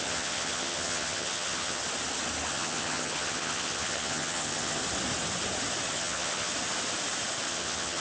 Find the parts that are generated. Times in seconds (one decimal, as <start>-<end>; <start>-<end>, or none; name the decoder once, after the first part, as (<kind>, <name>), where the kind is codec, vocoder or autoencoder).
0.0-1.8 (vocoder, HiFi-GAN); 2.5-4.8; 5.9-6.5; 7.5-8.0